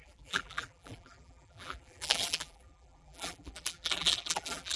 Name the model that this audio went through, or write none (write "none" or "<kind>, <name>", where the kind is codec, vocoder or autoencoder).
vocoder, BigVGAN v2